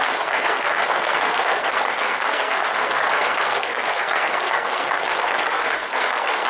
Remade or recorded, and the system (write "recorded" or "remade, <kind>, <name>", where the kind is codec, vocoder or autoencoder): remade, codec, SNAC